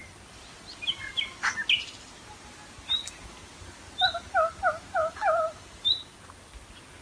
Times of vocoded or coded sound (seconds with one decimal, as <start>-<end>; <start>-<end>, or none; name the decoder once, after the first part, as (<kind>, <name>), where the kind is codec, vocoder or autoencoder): 0.0-2.1 (vocoder, BigVGAN v2); 5.0-6.3